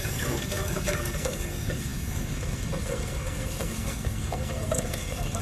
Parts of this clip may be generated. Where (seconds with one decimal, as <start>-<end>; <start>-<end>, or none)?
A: 0.0-5.4